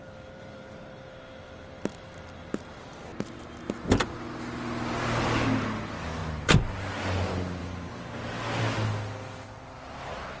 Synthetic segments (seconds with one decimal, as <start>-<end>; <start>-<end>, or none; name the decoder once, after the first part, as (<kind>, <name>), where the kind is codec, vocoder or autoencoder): none